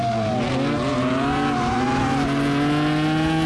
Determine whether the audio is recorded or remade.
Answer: recorded